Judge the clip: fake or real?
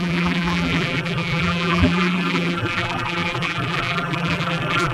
fake